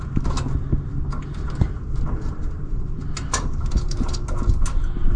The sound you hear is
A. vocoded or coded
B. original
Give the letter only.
B